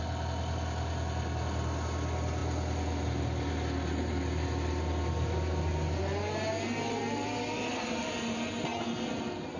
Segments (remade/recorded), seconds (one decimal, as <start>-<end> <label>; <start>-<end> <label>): 0.0-9.6 recorded